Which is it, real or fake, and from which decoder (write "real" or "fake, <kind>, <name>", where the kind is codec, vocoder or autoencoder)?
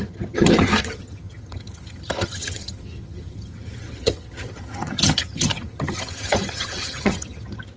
fake, vocoder, HiFi-GAN